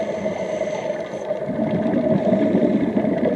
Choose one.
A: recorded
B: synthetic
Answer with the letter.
A